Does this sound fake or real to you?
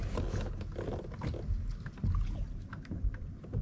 real